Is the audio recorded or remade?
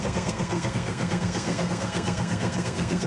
remade